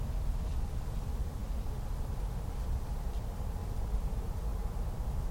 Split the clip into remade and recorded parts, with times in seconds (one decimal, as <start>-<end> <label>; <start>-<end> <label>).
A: 0.0-5.3 recorded